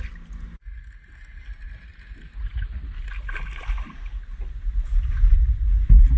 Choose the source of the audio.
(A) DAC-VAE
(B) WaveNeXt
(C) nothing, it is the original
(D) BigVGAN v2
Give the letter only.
C